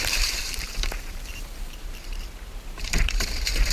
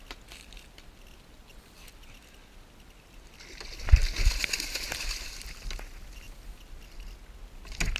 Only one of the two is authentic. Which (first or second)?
second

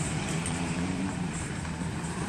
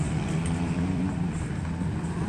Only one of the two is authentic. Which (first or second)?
second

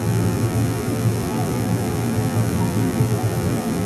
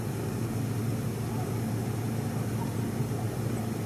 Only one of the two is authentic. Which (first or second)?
second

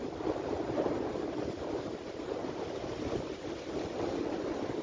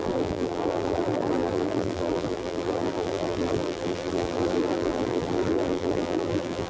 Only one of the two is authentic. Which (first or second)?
first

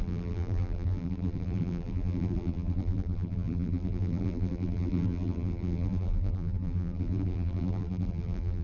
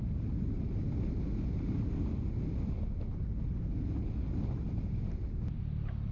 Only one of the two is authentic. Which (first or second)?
second